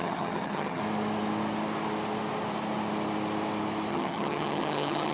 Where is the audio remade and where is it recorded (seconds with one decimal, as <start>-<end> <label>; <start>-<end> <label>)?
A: 0.0-0.8 remade; 0.8-3.9 recorded; 3.9-5.1 remade